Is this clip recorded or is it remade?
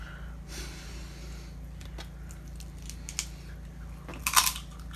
recorded